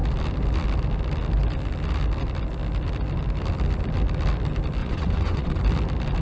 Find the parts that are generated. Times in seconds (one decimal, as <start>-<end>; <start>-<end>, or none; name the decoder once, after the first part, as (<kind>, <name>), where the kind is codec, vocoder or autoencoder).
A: 4.8-5.6 (vocoder, WaveNeXt)